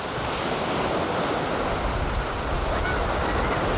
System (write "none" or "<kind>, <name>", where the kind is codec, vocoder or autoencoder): none